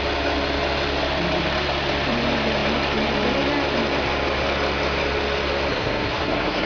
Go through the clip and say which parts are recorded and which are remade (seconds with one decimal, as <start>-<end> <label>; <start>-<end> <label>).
0.0-5.7 recorded; 5.7-6.7 remade